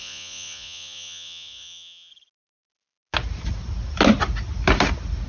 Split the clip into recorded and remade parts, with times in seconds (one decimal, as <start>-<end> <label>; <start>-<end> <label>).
0.0-2.1 remade; 2.1-5.3 recorded